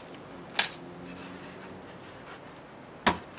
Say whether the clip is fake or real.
real